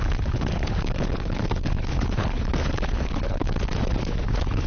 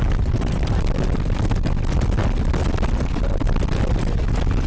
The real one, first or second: second